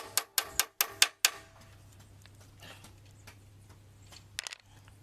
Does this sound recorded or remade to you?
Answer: recorded